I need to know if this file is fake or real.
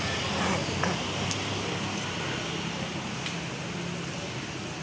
real